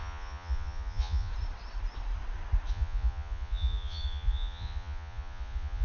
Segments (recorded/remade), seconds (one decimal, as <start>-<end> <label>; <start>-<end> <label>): 0.0-1.3 remade; 1.3-2.7 recorded; 2.7-5.8 remade